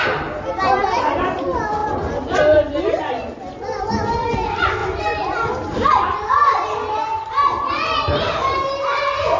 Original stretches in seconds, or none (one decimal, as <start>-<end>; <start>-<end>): 0.0-9.4